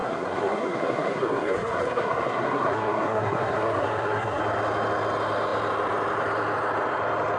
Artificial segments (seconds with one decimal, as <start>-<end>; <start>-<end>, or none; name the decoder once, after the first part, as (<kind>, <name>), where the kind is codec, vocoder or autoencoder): 0.0-4.4 (codec, SNAC)